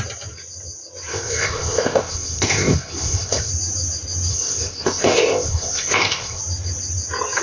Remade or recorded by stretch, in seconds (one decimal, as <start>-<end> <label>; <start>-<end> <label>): 0.0-1.1 recorded; 1.1-3.5 remade; 3.5-4.3 recorded; 4.3-6.4 remade; 6.4-7.4 recorded